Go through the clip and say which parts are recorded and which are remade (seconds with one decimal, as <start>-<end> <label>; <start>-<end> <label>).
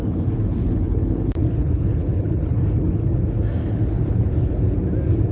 0.0-3.2 remade; 3.2-3.6 recorded; 3.6-4.6 remade; 4.6-5.3 recorded